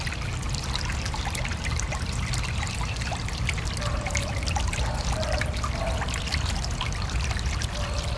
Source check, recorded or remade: recorded